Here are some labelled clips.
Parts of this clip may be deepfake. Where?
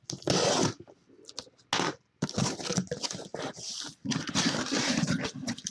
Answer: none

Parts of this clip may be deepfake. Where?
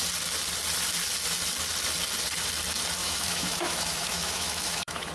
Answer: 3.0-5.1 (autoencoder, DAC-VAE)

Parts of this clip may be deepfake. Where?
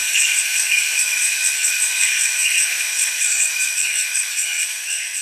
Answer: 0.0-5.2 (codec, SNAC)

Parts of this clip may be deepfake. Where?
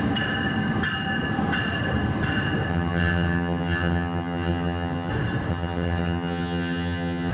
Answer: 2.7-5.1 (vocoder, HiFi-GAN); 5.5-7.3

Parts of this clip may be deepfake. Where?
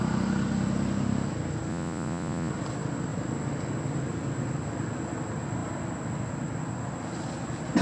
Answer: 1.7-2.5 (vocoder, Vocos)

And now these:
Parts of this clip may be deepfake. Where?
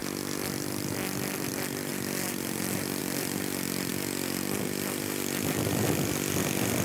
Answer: 1.5-3.9 (vocoder, BigVGAN v2); 5.4-6.8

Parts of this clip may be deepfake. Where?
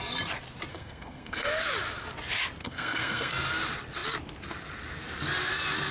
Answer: 0.7-1.6 (codec, SNAC); 2.6-3.3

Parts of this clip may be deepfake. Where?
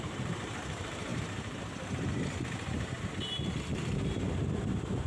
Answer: 0.0-3.7 (vocoder, BigVGAN v2); 4.2-5.1